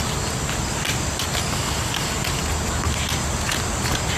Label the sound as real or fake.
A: real